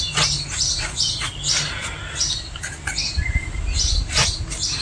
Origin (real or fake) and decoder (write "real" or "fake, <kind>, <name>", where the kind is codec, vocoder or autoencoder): real